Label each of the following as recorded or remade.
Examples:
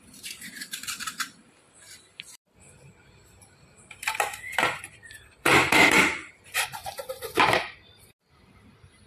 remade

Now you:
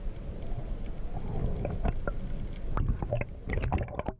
recorded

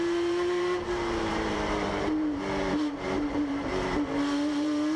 remade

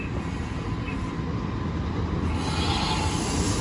recorded